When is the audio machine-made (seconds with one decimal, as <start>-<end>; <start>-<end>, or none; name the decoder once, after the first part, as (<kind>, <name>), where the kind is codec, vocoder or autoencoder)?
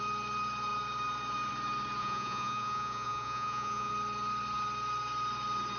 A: 2.0-3.9 (vocoder, Vocos)